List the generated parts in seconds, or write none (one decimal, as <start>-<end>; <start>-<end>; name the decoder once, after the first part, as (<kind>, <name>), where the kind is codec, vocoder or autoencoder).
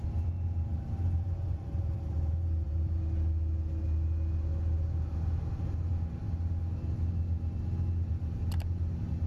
0.7-3.0 (vocoder, BigVGAN v2)